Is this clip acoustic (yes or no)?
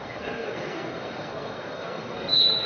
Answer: no